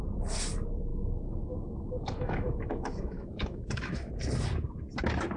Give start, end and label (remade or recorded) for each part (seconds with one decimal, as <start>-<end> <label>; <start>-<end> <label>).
0.0-0.9 recorded; 0.9-4.1 remade; 4.1-5.4 recorded

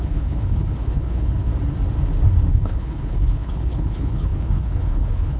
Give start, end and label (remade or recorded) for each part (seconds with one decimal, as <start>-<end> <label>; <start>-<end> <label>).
0.0-1.5 remade; 1.5-2.5 recorded; 2.5-5.4 remade

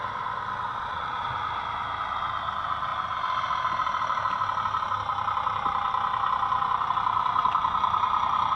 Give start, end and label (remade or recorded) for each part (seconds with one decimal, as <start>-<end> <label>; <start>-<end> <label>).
0.0-0.7 recorded; 0.7-1.3 remade; 1.3-8.6 recorded

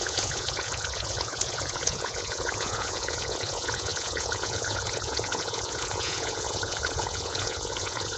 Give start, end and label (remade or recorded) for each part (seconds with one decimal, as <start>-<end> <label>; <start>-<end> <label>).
0.0-8.2 remade

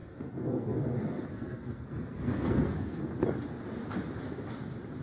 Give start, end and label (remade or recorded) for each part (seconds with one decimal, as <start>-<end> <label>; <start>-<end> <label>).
0.0-3.0 remade; 3.0-5.0 recorded